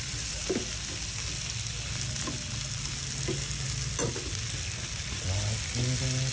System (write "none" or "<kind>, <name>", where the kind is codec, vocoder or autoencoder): none